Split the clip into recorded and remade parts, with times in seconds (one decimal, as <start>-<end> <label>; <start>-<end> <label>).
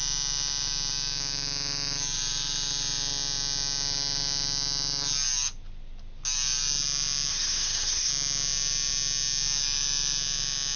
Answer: 0.0-7.3 recorded; 7.3-8.1 remade; 8.1-10.8 recorded